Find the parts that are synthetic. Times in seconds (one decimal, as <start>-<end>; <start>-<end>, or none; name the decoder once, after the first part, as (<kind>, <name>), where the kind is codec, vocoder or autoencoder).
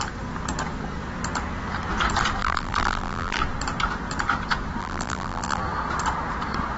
2.4-3.4 (vocoder, BigVGAN v2); 4.8-5.6